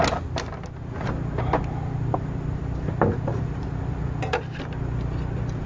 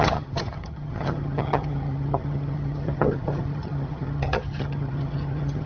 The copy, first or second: second